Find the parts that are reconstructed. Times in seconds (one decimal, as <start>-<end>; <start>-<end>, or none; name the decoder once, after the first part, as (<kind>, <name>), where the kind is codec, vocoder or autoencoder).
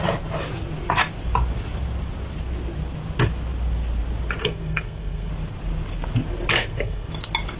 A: 4.4-5.3 (codec, SNAC); 6.6-7.1